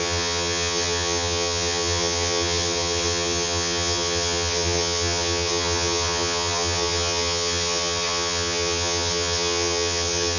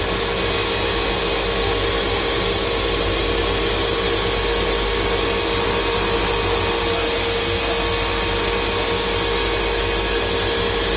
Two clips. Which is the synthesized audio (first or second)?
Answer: first